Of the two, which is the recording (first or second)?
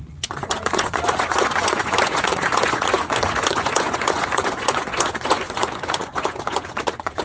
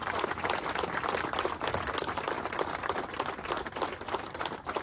second